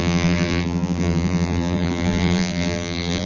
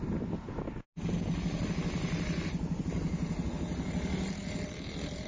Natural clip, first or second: second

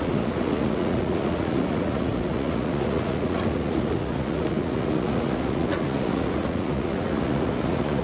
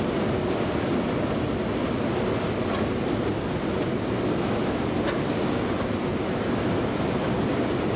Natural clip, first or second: second